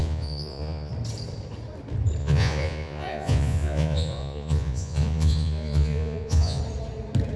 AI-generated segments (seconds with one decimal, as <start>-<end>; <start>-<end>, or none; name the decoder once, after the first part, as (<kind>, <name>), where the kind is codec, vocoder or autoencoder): 0.0-0.9 (vocoder, Vocos); 2.2-6.6